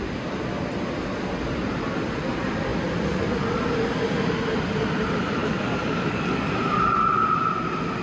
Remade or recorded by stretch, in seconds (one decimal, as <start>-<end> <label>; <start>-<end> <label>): 0.0-5.4 recorded; 5.4-6.5 remade; 6.5-8.0 recorded